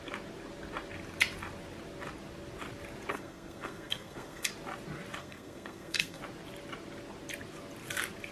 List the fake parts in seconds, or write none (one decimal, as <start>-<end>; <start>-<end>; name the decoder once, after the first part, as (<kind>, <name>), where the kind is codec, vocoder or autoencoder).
3.1-4.5 (codec, SNAC); 5.2-6.2